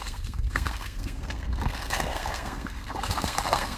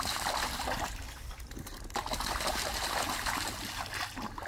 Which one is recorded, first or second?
second